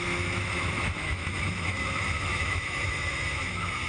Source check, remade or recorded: remade